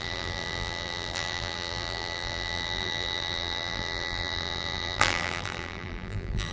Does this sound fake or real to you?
fake